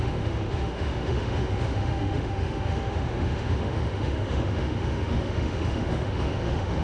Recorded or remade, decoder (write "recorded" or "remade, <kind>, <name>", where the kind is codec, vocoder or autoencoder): remade, autoencoder, DAC-VAE